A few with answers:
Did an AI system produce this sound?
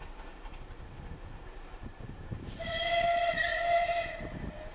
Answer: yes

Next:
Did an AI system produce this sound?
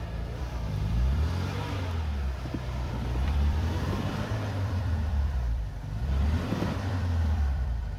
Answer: yes